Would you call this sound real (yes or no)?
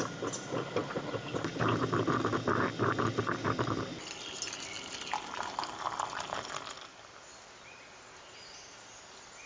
yes